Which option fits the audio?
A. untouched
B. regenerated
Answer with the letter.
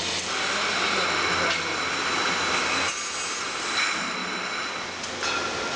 A